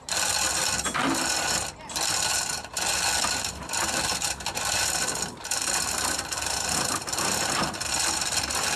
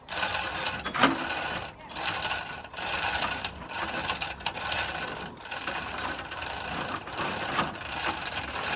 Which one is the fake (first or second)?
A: second